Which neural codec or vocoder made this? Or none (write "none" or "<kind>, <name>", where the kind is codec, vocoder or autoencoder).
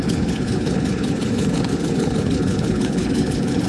codec, HILCodec